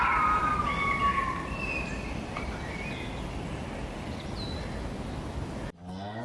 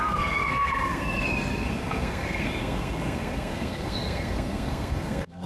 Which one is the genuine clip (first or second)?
first